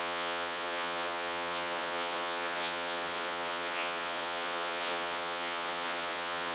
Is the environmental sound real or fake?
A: fake